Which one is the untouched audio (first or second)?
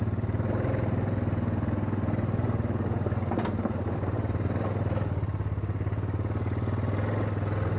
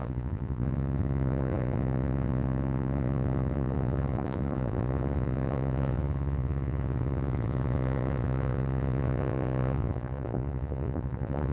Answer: first